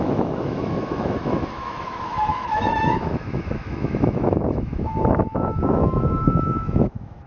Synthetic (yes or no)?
yes